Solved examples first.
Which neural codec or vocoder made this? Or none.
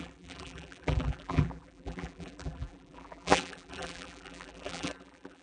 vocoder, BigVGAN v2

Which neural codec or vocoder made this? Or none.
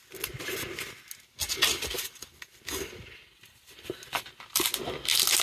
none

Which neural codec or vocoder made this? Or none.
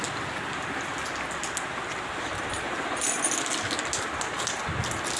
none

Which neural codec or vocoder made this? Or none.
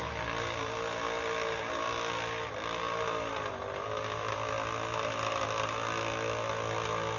none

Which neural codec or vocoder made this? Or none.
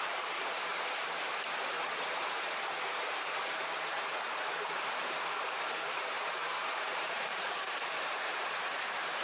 vocoder, BigVGAN v2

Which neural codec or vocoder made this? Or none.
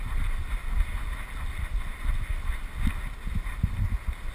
none